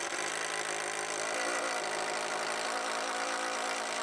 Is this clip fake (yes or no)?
no